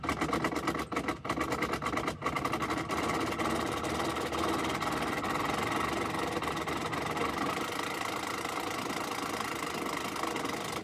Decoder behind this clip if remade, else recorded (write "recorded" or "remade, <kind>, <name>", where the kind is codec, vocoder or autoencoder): recorded